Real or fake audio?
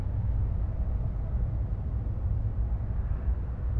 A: real